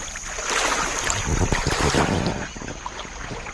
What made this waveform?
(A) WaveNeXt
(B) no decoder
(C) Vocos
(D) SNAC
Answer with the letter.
B